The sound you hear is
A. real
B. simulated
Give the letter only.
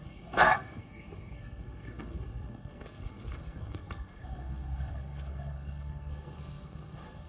B